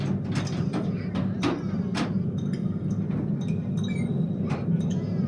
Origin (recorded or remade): recorded